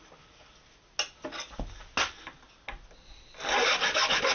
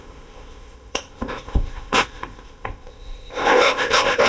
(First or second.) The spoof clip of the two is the second